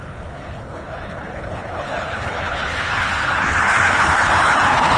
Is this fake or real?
fake